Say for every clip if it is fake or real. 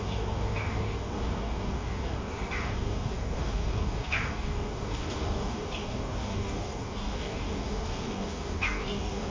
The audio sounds fake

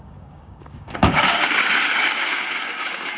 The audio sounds fake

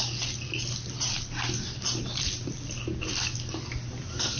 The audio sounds real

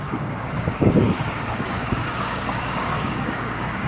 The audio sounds fake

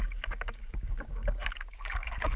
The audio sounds fake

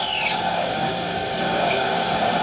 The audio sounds fake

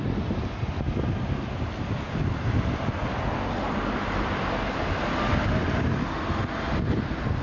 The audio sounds real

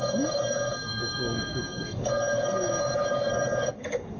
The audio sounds fake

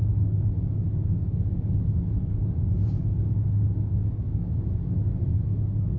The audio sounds fake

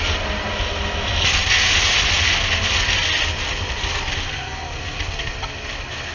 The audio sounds real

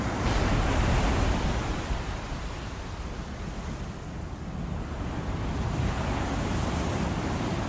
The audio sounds real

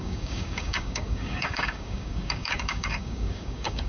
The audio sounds fake